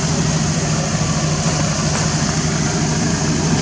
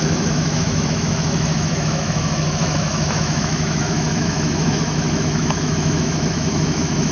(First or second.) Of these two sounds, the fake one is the second